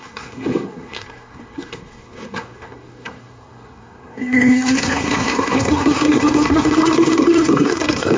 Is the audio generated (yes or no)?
yes